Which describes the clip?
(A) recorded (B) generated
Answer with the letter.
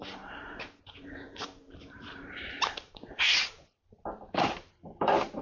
B